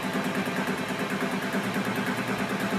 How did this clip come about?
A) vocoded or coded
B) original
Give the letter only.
B